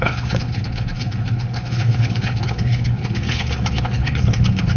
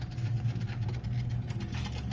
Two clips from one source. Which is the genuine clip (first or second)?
second